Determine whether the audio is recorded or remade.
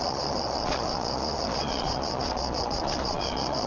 remade